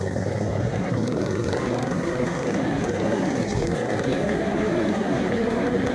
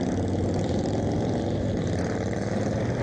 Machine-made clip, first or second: first